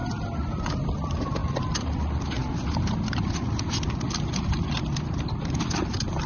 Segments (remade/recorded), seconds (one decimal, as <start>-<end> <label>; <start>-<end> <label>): 0.0-6.3 recorded

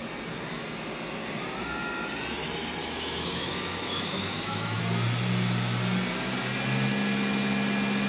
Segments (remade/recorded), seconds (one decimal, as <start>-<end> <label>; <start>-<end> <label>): 0.0-2.8 recorded; 2.8-4.8 remade; 4.8-8.1 recorded